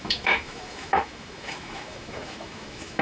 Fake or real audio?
fake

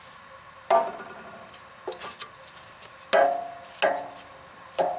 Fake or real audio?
real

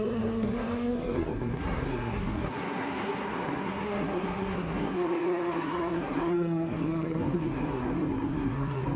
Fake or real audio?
fake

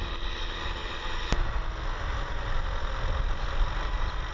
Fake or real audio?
real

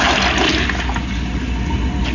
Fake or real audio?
real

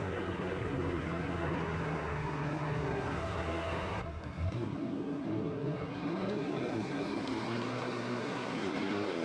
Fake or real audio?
fake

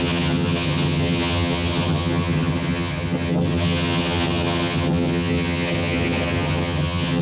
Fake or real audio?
fake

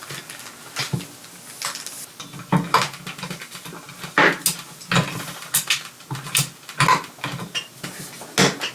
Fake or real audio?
real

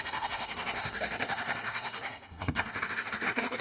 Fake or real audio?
fake